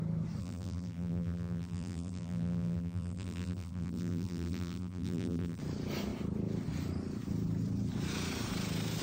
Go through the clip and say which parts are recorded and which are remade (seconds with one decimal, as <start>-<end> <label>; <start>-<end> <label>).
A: 0.0-0.4 recorded; 0.4-5.6 remade; 5.6-9.0 recorded